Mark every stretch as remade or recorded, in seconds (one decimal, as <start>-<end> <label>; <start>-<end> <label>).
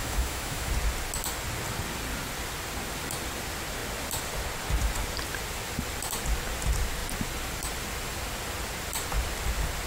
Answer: 0.0-0.7 remade; 0.7-9.9 recorded